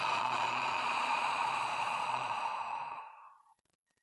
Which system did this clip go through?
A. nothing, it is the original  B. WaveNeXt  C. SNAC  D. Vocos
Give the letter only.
D